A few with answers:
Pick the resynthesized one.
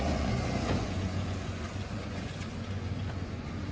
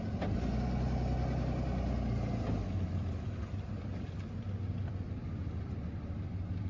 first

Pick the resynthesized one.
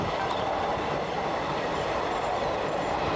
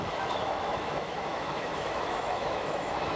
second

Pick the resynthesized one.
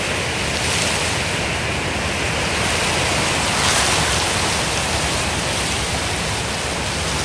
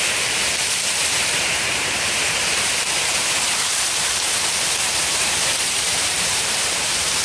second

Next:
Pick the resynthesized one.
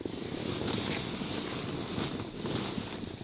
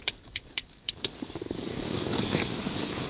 second